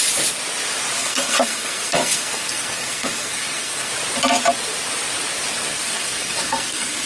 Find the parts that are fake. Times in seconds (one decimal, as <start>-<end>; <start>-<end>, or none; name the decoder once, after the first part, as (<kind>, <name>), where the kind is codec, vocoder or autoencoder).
1.0-3.9 (codec, SNAC); 5.7-7.1